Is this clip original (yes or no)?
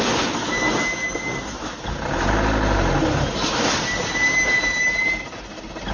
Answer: yes